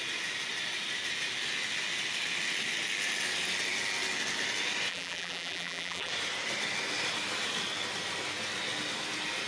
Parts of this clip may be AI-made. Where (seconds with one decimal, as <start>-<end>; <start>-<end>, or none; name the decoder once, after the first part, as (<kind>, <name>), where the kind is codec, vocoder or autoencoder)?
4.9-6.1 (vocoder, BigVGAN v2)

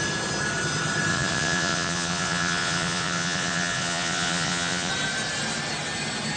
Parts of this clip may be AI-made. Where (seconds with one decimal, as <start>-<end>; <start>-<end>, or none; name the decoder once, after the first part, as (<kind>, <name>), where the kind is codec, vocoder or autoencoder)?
1.1-4.9 (vocoder, Vocos)

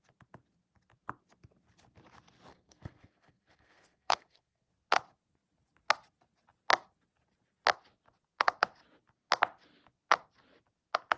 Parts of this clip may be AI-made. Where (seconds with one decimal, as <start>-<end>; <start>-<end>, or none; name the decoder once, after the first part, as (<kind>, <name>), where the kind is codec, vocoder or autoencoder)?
2.5-4.7 (codec, SNAC)

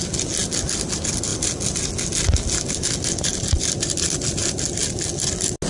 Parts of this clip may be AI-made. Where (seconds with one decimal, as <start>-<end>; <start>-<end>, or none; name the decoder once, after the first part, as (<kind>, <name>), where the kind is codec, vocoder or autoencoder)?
none

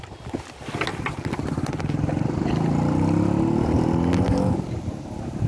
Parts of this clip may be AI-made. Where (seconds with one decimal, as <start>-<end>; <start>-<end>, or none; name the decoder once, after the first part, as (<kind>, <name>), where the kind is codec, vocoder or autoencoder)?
none

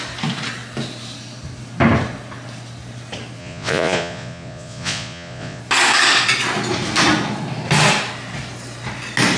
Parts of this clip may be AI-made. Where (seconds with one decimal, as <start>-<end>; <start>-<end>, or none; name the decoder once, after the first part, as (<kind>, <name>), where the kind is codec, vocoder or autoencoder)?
3.4-5.6 (vocoder, Vocos)